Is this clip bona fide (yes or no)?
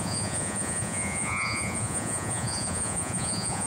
no